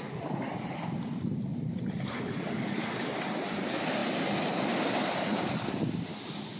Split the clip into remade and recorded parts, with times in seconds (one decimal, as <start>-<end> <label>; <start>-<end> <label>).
0.0-1.5 recorded; 1.5-3.4 remade; 3.4-4.0 recorded; 4.0-6.6 remade